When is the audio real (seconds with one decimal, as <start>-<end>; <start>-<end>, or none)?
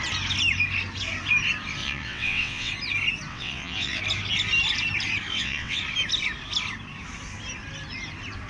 0.0-1.8; 2.7-3.3; 4.0-5.3; 5.8-8.5